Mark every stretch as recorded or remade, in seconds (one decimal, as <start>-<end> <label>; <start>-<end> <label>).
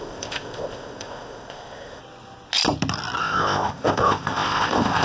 0.0-2.0 remade; 2.0-3.2 recorded; 3.2-5.0 remade